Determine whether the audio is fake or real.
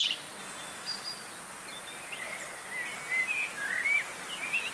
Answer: real